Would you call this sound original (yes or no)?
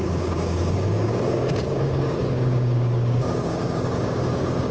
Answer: no